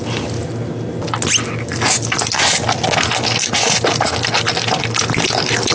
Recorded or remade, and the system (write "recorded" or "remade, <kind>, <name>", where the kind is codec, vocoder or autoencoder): recorded